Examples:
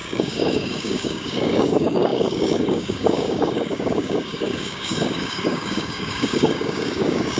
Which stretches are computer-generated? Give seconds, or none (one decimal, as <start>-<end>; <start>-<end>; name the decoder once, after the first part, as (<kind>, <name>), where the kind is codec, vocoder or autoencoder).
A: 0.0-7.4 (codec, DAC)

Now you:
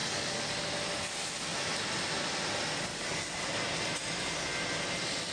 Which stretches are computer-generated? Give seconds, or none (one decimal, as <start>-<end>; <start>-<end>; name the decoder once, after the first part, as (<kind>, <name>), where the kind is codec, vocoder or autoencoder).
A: 0.0-0.5 (codec, DAC); 2.9-3.5

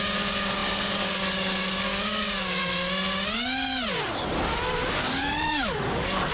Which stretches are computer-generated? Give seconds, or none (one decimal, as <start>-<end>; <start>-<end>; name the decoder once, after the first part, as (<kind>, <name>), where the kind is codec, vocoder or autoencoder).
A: 0.0-2.6 (codec, DAC); 4.9-6.3

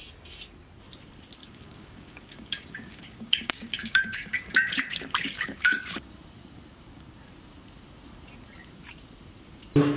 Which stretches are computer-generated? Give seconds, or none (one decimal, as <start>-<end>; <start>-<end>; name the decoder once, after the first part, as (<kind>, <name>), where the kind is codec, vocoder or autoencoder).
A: 1.4-6.1 (codec, DAC); 6.7-7.2